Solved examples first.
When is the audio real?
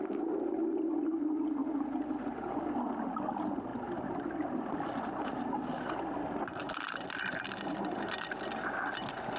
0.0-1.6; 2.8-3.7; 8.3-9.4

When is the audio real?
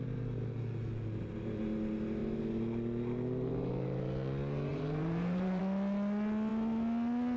0.0-4.7; 5.6-7.4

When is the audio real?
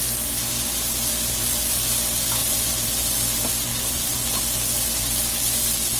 0.0-2.4; 3.1-3.7; 4.4-6.0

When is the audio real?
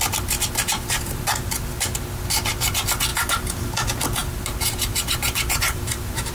0.0-0.7; 1.5-3.1; 3.7-4.2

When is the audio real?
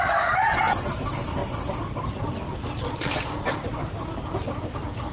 1.4-3.5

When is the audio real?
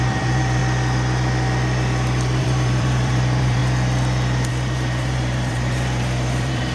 0.6-2.4; 3.6-4.5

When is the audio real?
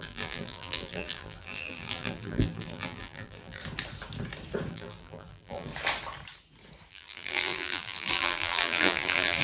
3.6-4.7; 5.7-6.9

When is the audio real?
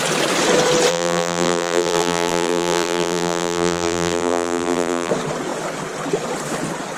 0.0-0.9; 5.1-7.0